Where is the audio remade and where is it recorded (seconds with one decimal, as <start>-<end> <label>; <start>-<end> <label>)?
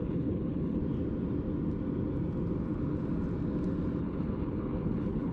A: 0.0-0.8 remade; 0.8-4.0 recorded; 4.0-5.3 remade